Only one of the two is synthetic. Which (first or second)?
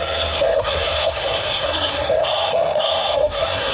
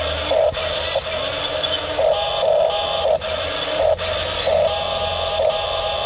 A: first